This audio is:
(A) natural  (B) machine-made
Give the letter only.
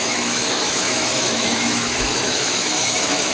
B